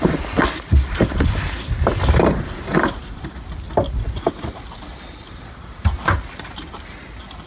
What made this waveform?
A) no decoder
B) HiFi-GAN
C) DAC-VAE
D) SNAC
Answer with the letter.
A